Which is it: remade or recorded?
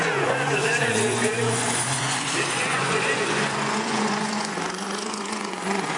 remade